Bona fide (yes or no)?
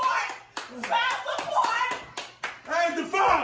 yes